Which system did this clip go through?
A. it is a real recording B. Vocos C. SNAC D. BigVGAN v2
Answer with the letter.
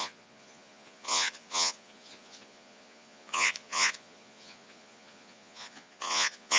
B